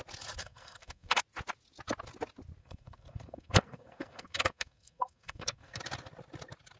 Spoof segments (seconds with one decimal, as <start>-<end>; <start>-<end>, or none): 0.4-1.2; 2.6-5.8